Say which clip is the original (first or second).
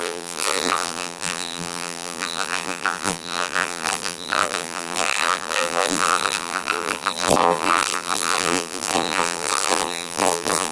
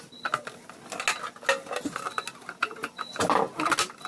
second